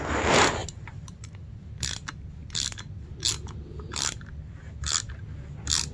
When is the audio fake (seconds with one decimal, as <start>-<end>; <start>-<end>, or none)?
0.6-1.5